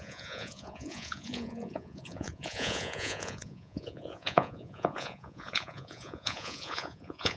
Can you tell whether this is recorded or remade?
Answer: remade